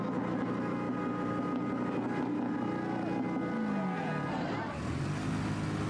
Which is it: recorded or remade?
recorded